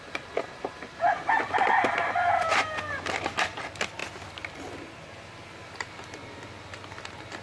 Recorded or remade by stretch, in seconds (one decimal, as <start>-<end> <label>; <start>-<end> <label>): 0.0-7.4 recorded